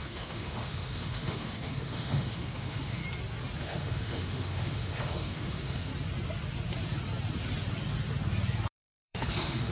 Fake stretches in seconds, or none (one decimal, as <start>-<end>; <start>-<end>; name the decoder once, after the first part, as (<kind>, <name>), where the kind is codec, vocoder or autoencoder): 0.0-3.0 (autoencoder, DAC-VAE); 3.6-5.9; 8.7-9.7